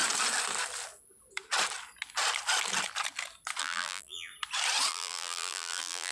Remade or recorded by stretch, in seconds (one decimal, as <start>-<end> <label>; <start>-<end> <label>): 0.0-3.6 recorded; 3.6-4.3 remade; 4.3-4.9 recorded; 4.9-6.1 remade